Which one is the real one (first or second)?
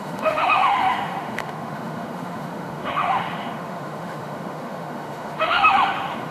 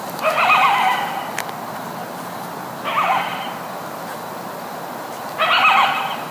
second